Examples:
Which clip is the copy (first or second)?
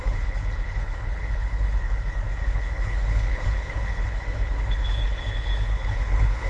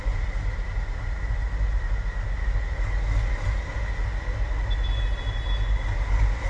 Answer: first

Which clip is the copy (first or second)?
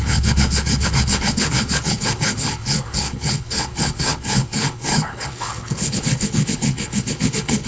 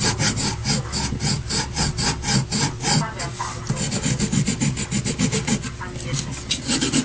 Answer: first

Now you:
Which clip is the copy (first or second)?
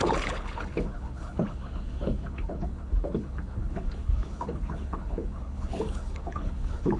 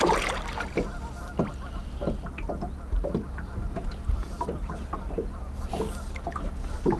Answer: first